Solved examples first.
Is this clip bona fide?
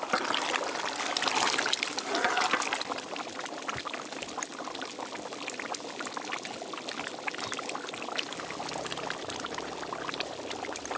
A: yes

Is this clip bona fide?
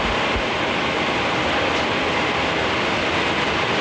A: yes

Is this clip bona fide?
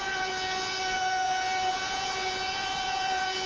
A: no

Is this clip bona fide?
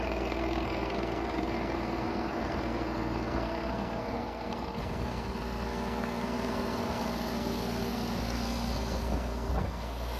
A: no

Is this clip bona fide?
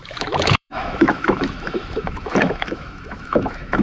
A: no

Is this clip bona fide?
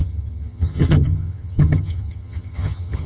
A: no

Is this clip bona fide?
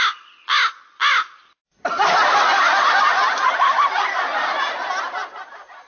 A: yes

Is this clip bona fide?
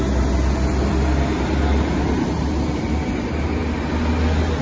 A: yes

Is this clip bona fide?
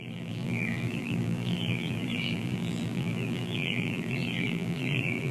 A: no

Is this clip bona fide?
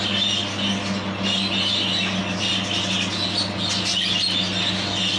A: yes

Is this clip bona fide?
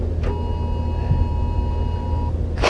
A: yes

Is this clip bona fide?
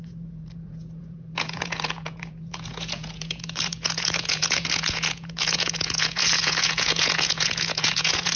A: no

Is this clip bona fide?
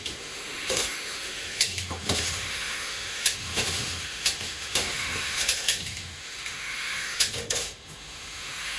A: no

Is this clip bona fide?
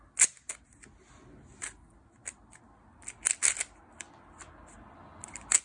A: yes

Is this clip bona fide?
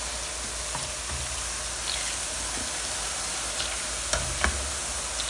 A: yes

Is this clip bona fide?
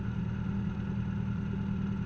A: yes